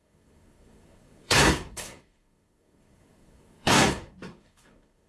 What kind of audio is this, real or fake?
fake